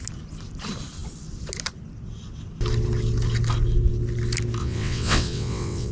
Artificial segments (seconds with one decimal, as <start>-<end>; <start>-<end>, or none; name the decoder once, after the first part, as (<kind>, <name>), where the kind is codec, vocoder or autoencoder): 4.6-5.9 (vocoder, WaveNeXt)